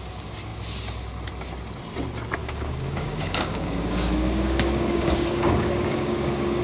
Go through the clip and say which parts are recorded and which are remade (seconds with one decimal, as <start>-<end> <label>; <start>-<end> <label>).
0.0-2.4 recorded; 2.4-6.6 remade